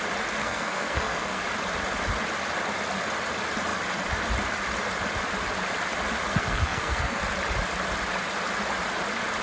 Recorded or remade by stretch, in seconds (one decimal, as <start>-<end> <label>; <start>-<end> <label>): 0.0-0.4 recorded; 0.4-1.4 remade; 1.4-6.3 recorded; 6.3-7.2 remade; 7.2-9.4 recorded